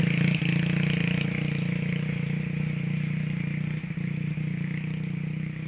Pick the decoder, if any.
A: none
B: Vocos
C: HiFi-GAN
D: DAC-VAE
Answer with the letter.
A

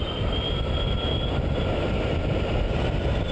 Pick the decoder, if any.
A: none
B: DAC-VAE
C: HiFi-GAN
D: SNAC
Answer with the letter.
A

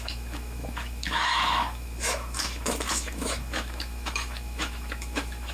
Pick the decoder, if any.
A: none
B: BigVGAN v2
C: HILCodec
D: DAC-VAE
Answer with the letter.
D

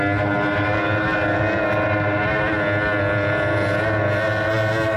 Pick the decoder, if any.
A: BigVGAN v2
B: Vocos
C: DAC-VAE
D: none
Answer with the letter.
D